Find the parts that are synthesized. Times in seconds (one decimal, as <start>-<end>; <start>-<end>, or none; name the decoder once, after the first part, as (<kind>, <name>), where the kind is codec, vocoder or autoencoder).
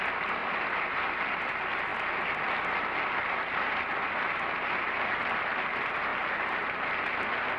0.4-1.5 (vocoder, BigVGAN v2)